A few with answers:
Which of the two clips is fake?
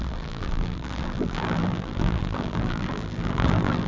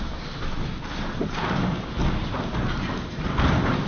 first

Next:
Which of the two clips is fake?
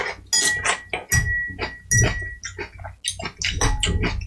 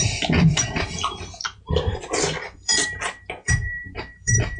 second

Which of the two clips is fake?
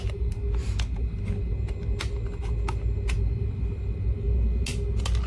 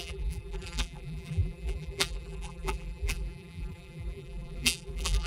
second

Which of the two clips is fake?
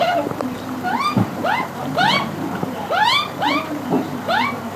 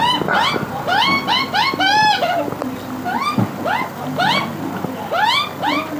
first